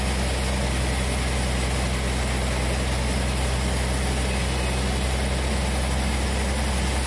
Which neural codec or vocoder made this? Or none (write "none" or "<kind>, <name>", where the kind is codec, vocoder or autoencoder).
none